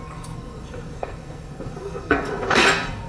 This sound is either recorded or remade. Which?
remade